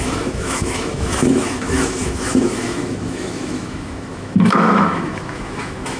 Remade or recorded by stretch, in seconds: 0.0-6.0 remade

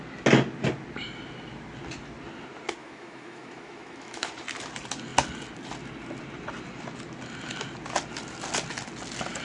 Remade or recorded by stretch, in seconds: 0.0-2.8 recorded; 2.8-4.3 remade; 4.3-9.4 recorded

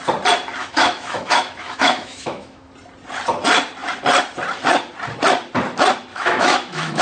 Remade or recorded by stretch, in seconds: 0.0-0.6 recorded; 0.6-2.7 remade; 2.7-6.1 recorded; 6.1-7.0 remade

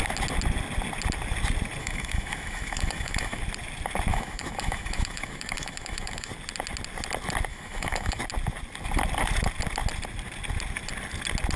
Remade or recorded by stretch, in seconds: 0.0-1.8 recorded; 1.8-3.4 remade; 3.4-4.1 recorded; 4.1-6.3 remade; 6.3-7.5 recorded; 7.5-8.2 remade; 8.2-11.6 recorded

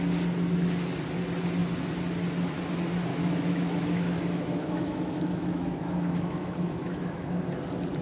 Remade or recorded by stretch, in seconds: 0.0-3.1 recorded; 3.1-7.4 remade; 7.4-8.0 recorded

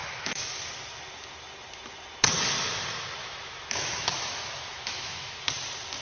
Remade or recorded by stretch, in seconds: 0.0-0.7 remade; 0.7-3.2 recorded; 3.2-5.5 remade; 5.5-6.0 recorded

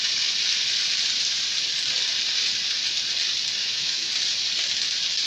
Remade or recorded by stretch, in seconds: 0.0-3.6 recorded; 3.6-4.1 remade; 4.1-5.3 recorded